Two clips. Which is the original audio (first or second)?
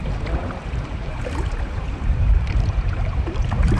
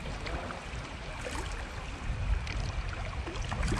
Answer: second